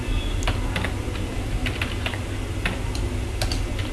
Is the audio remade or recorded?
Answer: recorded